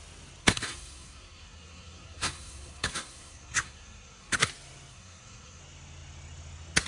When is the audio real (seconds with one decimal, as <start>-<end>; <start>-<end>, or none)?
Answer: 0.0-0.4; 4.5-4.9; 5.6-6.9